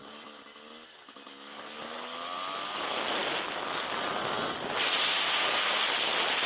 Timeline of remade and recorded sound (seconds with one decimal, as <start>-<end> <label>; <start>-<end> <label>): 0.0-6.5 recorded

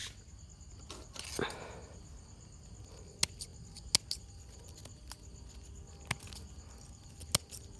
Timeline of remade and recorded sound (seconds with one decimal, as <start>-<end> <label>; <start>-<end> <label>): 0.0-7.8 recorded

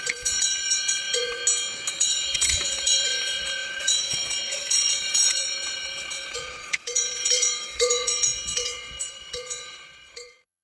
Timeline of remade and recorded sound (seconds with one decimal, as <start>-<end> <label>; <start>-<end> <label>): 0.0-1.4 remade; 1.4-1.9 recorded; 1.9-10.6 remade

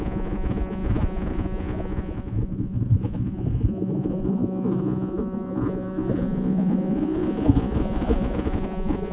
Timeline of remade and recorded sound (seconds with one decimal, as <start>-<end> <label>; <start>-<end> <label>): 0.0-9.1 remade

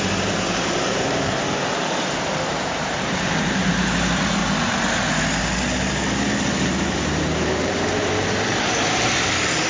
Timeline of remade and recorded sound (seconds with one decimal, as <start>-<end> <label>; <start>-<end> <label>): 0.0-4.4 remade; 4.4-7.1 recorded; 7.1-9.7 remade

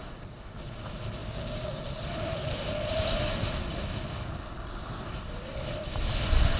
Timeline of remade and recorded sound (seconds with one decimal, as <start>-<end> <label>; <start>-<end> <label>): 0.0-1.2 recorded; 1.2-1.8 remade; 1.8-6.6 recorded